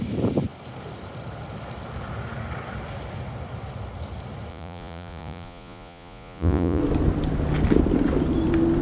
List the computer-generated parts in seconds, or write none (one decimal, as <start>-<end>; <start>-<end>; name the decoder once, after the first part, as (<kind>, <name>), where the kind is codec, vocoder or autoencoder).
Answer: 4.5-6.8 (vocoder, Vocos)